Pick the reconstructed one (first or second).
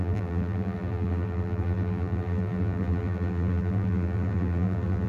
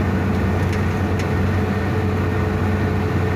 first